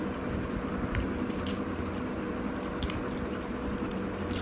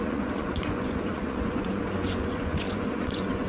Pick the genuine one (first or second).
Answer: first